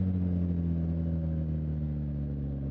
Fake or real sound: real